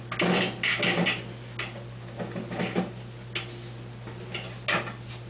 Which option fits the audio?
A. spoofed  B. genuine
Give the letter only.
B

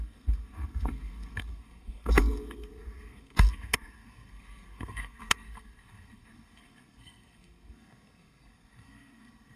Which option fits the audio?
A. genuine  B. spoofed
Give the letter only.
B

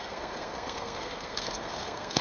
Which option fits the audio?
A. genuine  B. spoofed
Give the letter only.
B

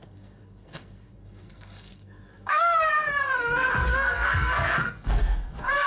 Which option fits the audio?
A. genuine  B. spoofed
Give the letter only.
B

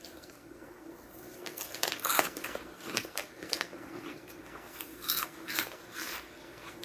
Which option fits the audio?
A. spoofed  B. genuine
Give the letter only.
A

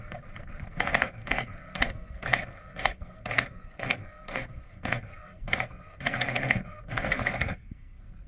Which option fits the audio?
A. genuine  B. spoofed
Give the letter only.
B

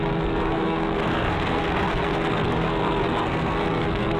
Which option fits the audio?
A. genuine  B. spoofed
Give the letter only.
B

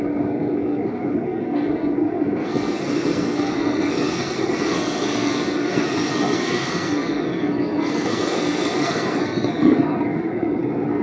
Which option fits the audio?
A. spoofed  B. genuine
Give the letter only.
A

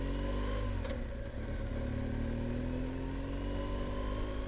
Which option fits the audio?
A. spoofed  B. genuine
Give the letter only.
B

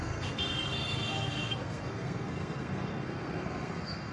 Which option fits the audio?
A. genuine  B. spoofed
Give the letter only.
B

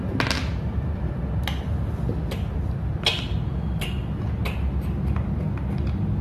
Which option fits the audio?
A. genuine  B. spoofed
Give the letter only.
A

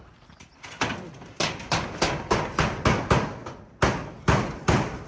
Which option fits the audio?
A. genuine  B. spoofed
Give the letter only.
A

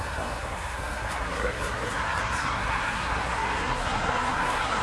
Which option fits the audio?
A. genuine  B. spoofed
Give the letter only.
B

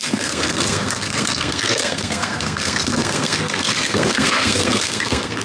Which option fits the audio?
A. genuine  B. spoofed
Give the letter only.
B